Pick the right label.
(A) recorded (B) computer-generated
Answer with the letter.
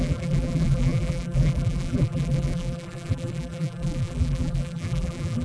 B